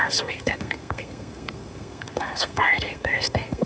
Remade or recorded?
remade